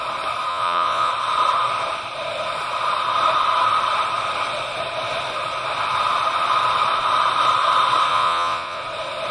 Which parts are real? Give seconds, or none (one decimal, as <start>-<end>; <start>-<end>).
0.0-0.5; 1.1-8.1; 8.8-9.3